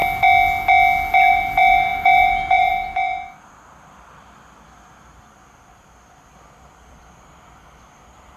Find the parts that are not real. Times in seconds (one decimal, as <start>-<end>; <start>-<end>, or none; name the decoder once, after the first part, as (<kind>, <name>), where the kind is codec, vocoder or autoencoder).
1.3-8.4 (vocoder, BigVGAN v2)